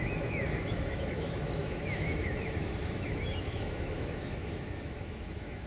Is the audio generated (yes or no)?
yes